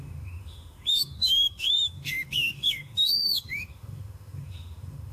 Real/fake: fake